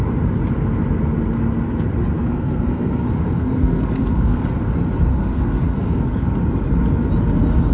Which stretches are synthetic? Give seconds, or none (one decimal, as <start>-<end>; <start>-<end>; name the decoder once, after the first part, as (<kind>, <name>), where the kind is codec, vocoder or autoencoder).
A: 2.2-4.5 (codec, SNAC); 5.1-6.0